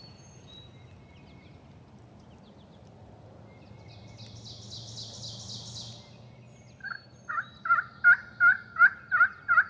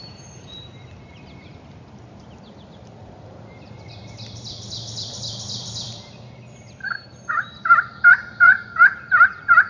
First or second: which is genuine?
first